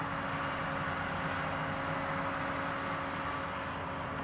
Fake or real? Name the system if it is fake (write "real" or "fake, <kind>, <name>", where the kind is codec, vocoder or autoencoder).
real